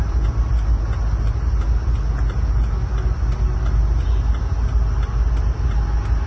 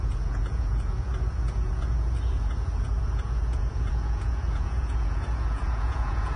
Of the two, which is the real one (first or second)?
first